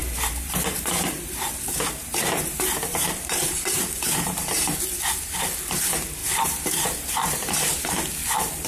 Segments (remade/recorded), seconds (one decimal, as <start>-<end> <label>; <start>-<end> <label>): 0.0-4.8 remade; 4.8-6.2 recorded; 6.2-7.9 remade; 7.9-8.7 recorded